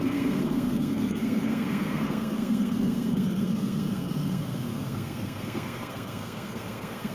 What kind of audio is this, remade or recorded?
remade